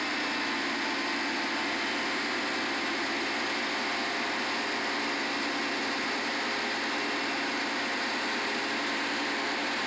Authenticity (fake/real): real